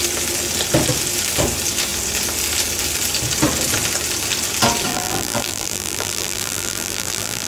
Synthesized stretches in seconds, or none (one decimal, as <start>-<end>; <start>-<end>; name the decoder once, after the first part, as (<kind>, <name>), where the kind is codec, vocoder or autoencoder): 4.9-7.5 (vocoder, BigVGAN v2)